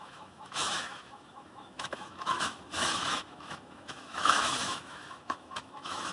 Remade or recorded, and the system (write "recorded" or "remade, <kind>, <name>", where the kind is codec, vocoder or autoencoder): remade, autoencoder, DAC-VAE